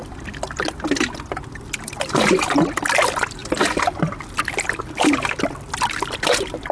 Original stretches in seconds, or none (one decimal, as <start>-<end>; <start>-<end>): 0.0-6.7